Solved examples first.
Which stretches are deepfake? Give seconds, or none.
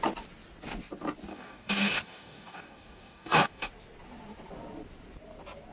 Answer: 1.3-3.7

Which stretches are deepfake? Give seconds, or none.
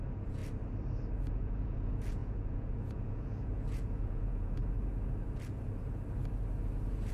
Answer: 0.0-0.4; 1.3-4.6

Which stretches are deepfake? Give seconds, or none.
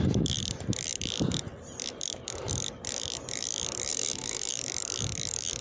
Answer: 3.9-4.5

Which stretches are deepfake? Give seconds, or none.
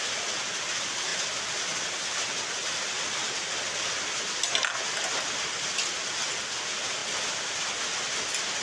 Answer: none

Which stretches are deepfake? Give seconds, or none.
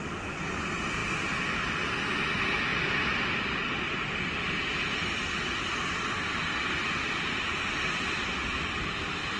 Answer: none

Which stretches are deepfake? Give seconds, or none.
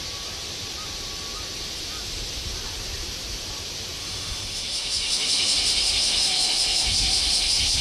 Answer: 4.0-7.8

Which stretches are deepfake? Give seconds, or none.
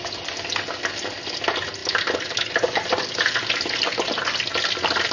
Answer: none